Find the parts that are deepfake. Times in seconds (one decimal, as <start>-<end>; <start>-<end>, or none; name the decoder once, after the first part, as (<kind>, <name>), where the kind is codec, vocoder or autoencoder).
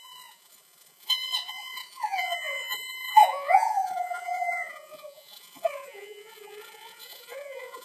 0.0-7.8 (vocoder, Vocos)